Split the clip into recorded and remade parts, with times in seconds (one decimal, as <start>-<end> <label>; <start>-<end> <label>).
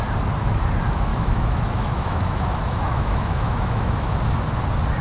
0.0-1.1 recorded; 1.1-4.1 remade; 4.1-5.0 recorded